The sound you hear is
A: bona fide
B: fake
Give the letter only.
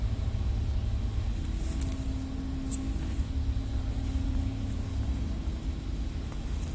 A